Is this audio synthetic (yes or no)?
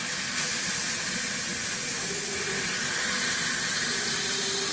no